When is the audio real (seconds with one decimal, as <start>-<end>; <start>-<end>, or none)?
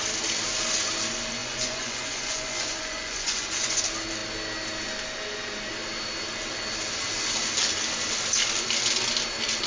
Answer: 0.0-1.4; 3.8-9.7